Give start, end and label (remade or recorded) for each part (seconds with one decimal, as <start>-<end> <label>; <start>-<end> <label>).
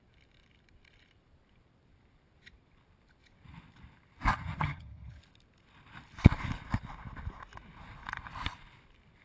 0.0-4.3 recorded; 4.3-5.2 remade; 5.2-9.2 recorded